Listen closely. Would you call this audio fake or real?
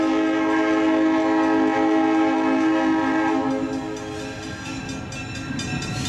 real